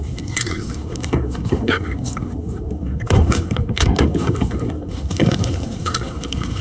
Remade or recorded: remade